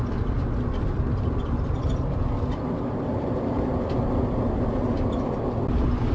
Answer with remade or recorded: recorded